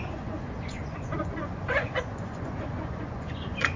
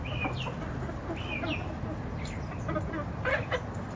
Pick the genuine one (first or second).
second